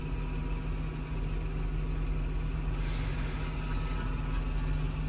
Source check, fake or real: real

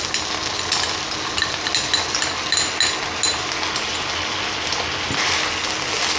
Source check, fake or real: real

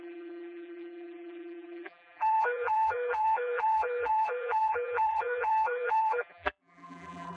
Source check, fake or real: fake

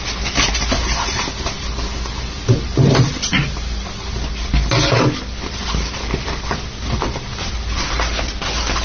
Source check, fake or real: real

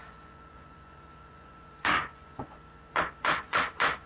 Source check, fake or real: fake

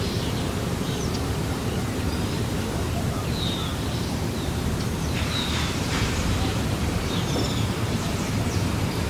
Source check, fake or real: fake